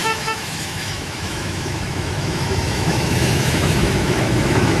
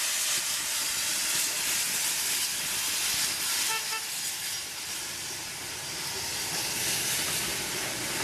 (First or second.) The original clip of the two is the second